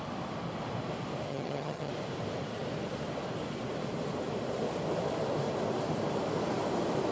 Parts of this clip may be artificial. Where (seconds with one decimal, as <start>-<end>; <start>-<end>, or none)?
1.3-1.9